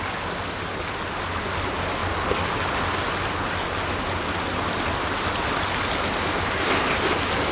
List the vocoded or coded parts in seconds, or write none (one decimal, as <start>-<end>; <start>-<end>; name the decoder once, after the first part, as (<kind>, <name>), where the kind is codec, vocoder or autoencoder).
none